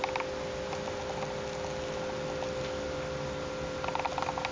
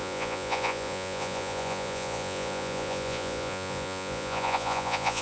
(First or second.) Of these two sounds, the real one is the first